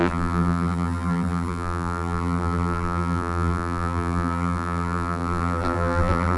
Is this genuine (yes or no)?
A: no